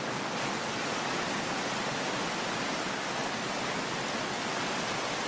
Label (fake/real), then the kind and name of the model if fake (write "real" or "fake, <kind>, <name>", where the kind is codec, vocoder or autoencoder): real